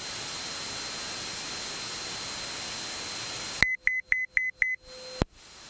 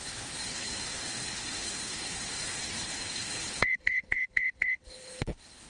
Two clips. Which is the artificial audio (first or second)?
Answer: second